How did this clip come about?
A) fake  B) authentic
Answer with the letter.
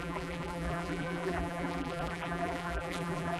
A